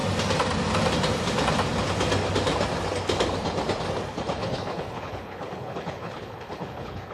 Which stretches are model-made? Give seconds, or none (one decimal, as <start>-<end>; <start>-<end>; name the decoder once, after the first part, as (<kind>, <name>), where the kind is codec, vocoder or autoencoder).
4.4-7.1 (codec, HILCodec)